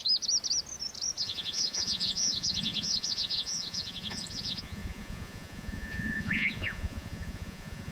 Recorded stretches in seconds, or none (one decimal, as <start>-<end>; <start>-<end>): 0.0-1.2